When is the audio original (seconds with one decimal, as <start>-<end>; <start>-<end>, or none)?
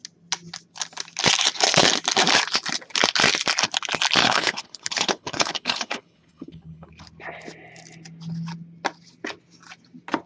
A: 0.0-4.2; 6.9-10.3